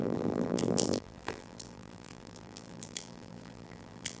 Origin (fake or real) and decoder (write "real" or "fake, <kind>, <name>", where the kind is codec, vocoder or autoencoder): fake, vocoder, BigVGAN v2